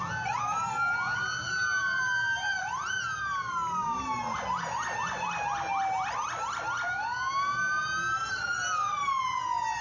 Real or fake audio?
real